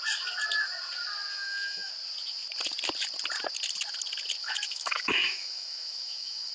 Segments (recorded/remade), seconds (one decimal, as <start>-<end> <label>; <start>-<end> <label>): 0.0-1.3 recorded; 1.3-1.9 remade; 1.9-4.4 recorded; 4.4-6.5 remade